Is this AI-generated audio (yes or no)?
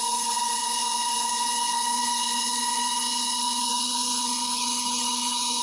yes